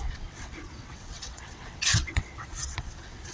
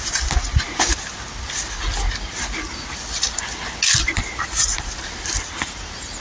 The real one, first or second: second